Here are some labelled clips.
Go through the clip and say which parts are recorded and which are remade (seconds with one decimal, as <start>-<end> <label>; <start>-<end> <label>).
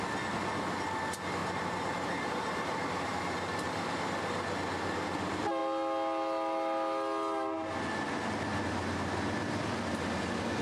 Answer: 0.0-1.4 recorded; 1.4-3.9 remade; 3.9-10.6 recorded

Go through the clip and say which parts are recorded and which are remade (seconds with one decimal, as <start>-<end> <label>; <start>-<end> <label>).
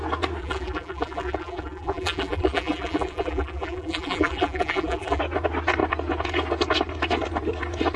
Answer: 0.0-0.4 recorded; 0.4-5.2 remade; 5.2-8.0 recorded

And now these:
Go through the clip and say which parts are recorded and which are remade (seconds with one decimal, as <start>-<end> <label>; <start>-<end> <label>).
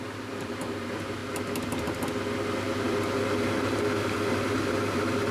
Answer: 0.0-1.2 remade; 1.2-3.6 recorded; 3.6-5.3 remade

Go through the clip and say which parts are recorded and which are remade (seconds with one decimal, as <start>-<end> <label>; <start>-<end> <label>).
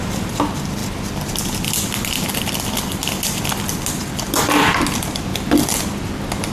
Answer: 0.0-5.3 remade; 5.3-6.5 recorded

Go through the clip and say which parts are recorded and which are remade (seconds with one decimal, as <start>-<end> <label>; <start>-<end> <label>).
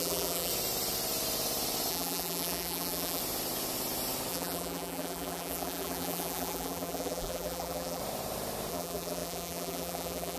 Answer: 0.0-0.5 remade; 0.5-1.9 recorded; 1.9-3.2 remade; 3.2-4.3 recorded; 4.3-8.0 remade; 8.0-8.7 recorded; 8.7-10.4 remade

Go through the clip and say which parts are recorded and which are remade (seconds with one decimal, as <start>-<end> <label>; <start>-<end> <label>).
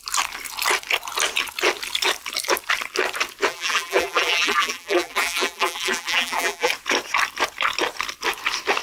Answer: 0.0-3.5 recorded; 3.5-6.7 remade; 6.7-8.8 recorded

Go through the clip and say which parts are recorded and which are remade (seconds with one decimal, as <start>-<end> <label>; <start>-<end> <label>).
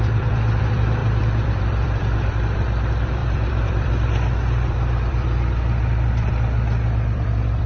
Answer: 0.0-7.7 remade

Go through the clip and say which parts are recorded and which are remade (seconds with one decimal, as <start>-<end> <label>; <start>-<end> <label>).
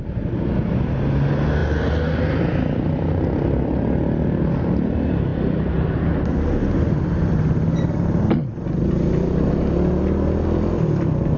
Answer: 0.0-11.4 recorded